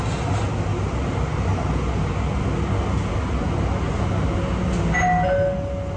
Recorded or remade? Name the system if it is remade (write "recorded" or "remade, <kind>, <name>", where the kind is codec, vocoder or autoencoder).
recorded